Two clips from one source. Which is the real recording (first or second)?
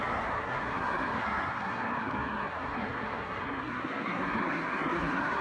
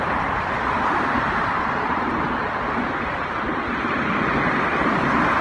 second